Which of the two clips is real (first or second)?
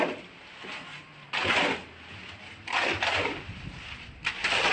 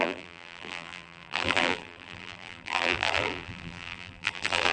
first